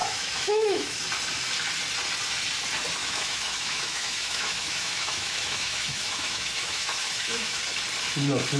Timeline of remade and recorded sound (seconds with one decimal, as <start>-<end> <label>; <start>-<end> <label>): 0.0-1.0 remade; 1.0-3.0 recorded; 3.0-7.6 remade; 7.6-8.6 recorded